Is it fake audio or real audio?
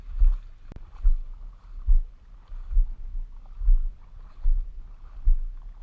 real